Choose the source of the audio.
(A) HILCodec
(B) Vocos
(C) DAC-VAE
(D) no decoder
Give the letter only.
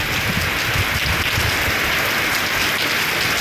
D